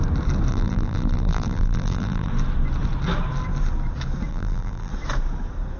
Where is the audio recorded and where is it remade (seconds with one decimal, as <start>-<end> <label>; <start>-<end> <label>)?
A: 0.0-0.5 recorded; 0.5-2.3 remade; 2.3-4.3 recorded; 4.3-4.9 remade; 4.9-5.8 recorded